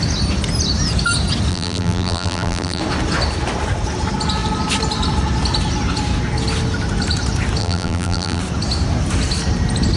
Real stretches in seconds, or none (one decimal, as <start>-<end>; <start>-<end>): 0.0-1.5; 2.8-7.6; 8.4-10.0